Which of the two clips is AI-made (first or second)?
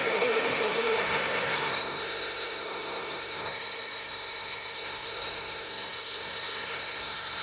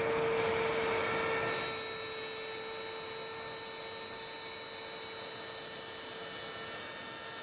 first